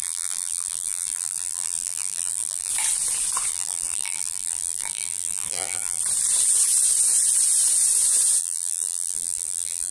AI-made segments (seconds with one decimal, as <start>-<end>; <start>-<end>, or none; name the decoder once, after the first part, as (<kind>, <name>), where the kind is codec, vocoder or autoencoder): 0.0-2.7 (vocoder, BigVGAN v2); 3.5-6.0; 8.4-9.9